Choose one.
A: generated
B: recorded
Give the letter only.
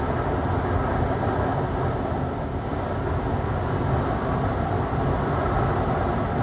B